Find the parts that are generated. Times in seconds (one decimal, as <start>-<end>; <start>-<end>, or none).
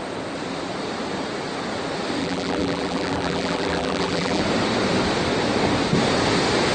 2.2-4.4